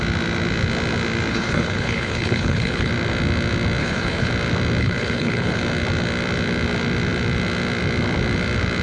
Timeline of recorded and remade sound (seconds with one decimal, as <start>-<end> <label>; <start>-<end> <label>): 0.0-1.3 recorded; 1.3-2.9 remade; 2.9-3.8 recorded; 3.8-4.3 remade; 4.3-4.8 recorded; 4.8-5.6 remade; 5.6-8.8 recorded